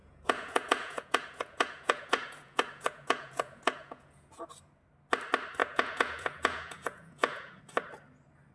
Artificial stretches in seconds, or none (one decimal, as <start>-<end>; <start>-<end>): 0.0-4.4; 5.6-7.6